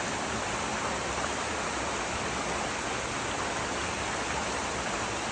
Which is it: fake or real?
real